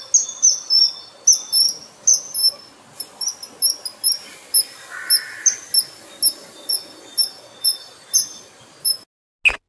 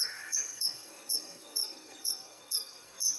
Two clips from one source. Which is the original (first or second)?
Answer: first